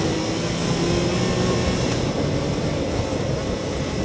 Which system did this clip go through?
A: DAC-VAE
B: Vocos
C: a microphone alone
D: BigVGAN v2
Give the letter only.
C